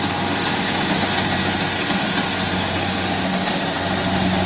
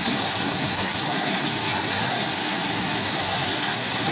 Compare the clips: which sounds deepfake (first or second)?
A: second